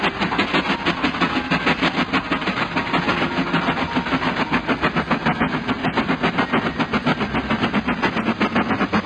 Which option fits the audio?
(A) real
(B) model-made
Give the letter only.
A